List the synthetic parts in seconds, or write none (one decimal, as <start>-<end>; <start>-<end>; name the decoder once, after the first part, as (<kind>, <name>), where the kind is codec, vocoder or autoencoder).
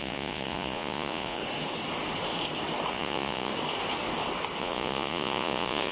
0.0-1.4 (vocoder, Vocos); 2.9-3.5; 4.6-5.9